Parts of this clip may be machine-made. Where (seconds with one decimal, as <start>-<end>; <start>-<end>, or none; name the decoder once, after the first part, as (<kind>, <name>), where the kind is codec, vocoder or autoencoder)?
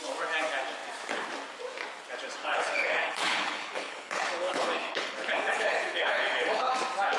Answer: 2.4-6.7 (codec, HILCodec)